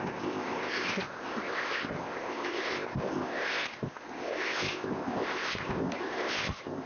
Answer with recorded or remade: remade